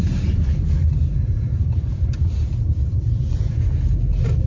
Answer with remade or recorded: remade